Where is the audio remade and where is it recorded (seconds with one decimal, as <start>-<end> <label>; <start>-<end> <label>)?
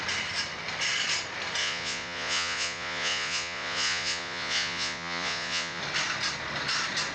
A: 0.0-1.6 recorded; 1.6-5.8 remade; 5.8-7.1 recorded